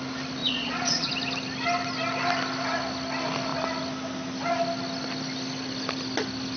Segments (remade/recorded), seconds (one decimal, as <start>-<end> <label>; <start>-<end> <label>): 0.0-0.4 recorded; 0.4-1.1 remade; 1.1-6.6 recorded